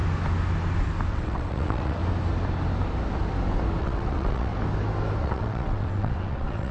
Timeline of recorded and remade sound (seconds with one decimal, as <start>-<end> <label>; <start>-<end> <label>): 0.0-1.1 recorded; 1.1-2.0 remade; 2.0-3.8 recorded; 3.8-4.5 remade; 4.5-5.2 recorded; 5.2-6.7 remade